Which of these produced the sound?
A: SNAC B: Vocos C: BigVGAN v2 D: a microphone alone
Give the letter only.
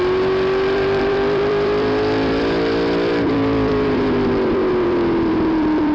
C